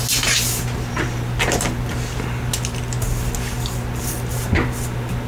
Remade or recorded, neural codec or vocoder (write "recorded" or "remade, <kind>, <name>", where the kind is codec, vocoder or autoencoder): recorded